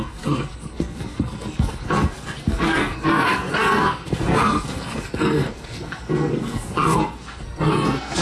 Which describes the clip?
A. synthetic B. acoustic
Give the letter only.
A